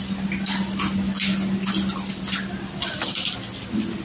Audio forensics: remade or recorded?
recorded